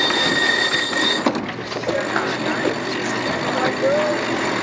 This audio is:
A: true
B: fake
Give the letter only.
A